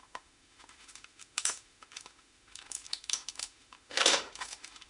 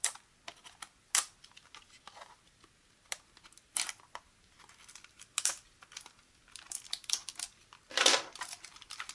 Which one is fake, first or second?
first